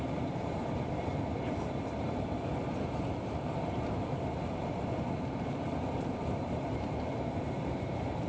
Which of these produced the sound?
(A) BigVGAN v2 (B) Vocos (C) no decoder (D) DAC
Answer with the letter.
A